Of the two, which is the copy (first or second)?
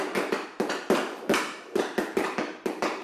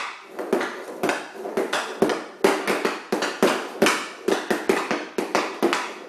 first